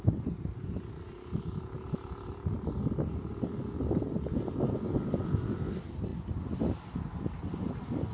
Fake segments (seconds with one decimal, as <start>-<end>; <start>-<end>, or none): none